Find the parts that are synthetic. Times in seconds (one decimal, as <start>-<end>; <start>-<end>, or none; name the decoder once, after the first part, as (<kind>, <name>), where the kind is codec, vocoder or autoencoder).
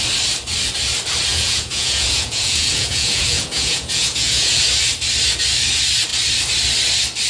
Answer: 1.3-4.6 (vocoder, Vocos)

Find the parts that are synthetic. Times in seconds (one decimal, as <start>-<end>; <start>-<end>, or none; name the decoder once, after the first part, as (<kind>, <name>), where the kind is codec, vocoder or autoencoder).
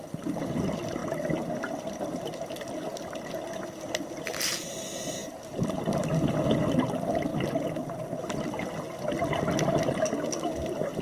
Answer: none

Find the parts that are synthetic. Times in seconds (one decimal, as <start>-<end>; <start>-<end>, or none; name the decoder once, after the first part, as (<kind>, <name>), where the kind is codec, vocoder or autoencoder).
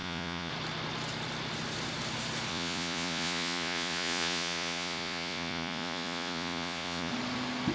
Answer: 0.0-0.5 (vocoder, Vocos); 2.5-7.1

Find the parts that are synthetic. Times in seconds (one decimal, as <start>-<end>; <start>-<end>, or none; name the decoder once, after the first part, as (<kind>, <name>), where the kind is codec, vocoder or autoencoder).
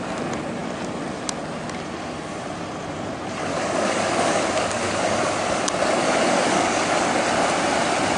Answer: 3.5-5.6 (codec, DAC); 6.0-7.1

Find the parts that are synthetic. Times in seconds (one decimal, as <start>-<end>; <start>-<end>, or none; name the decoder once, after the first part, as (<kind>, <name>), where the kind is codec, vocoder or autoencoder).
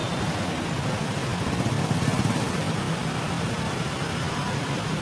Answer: 0.0-1.3 (vocoder, BigVGAN v2); 4.2-5.0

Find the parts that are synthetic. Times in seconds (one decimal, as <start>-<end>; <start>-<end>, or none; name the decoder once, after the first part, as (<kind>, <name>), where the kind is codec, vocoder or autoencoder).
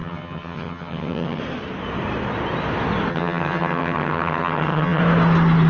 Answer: 0.0-1.4 (vocoder, HiFi-GAN); 3.1-5.0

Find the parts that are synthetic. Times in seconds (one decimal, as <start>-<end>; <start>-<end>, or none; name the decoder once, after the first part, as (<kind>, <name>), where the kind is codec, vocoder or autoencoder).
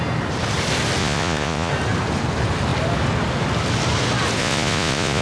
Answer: 1.0-1.7 (vocoder, Vocos); 4.4-5.2